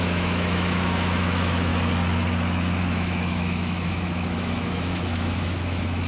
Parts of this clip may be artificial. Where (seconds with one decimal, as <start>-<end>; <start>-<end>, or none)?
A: 0.0-1.7; 2.8-6.1